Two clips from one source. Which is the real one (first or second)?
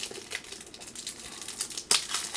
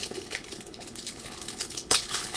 first